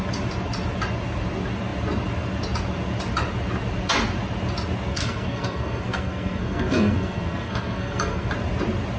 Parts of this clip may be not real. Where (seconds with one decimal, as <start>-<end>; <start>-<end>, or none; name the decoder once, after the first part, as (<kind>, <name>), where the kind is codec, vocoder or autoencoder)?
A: 4.9-8.3 (codec, SNAC)